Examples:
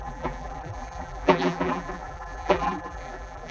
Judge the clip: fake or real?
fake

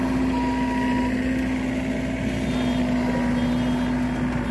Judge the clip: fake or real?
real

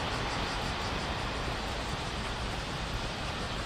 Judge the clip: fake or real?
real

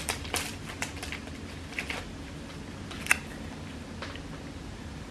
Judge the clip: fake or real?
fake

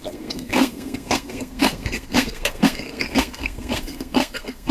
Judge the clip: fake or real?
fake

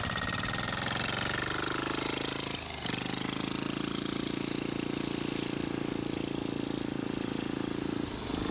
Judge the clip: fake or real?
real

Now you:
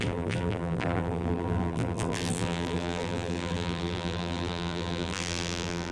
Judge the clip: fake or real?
fake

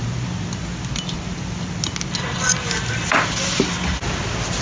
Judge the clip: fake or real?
real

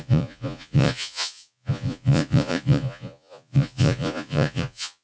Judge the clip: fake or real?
fake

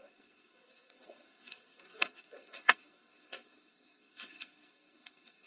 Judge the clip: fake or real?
fake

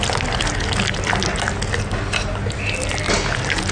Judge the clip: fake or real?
real